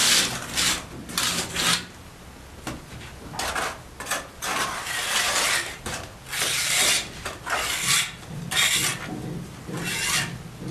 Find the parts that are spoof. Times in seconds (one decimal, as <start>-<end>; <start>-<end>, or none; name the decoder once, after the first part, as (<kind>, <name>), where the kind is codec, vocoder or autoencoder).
4.3-8.4 (vocoder, BigVGAN v2)